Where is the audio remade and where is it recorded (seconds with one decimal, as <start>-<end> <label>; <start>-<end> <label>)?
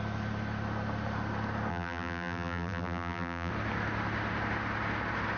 0.0-1.7 recorded; 1.7-3.5 remade; 3.5-5.4 recorded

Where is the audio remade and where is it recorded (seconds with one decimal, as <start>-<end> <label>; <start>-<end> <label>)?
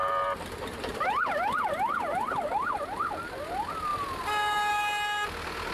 0.0-3.4 remade; 3.4-3.9 recorded; 3.9-4.7 remade; 4.7-5.7 recorded